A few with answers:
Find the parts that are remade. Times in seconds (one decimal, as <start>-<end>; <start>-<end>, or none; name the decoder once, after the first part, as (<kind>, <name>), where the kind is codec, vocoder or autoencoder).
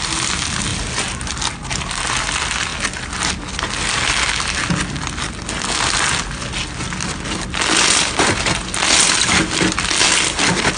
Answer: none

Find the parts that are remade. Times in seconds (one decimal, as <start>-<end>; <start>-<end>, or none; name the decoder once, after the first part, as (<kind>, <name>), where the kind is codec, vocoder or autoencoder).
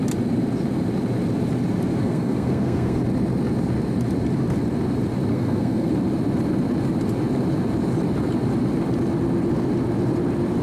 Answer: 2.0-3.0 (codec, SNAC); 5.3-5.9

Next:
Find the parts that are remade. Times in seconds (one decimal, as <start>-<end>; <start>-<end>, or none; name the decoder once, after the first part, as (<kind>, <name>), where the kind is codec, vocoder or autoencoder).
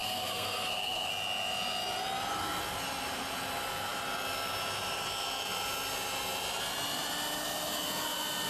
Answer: 0.0-1.1 (codec, SNAC)